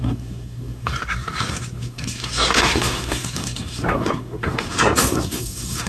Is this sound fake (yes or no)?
yes